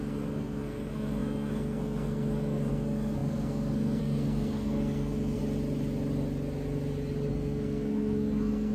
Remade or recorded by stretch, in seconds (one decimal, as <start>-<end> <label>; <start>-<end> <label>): 0.0-5.4 remade; 5.4-7.3 recorded; 7.3-8.7 remade